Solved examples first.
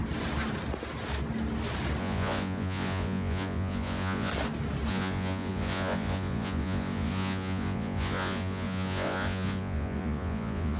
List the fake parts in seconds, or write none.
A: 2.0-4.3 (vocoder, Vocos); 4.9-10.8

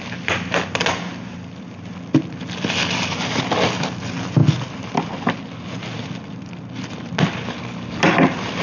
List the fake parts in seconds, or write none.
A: none

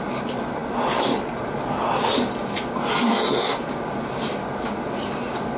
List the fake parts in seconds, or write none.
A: none

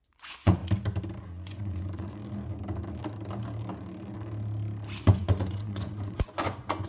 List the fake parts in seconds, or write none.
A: 0.0-0.6 (vocoder, Vocos); 1.2-2.2; 5.0-6.9

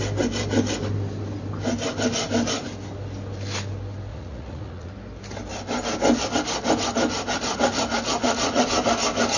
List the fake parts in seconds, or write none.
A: 4.1-4.9 (vocoder, Vocos); 8.2-8.8

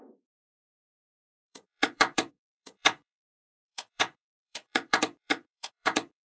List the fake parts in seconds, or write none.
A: 0.0-6.4 (vocoder, Vocos)